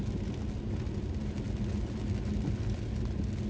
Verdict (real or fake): real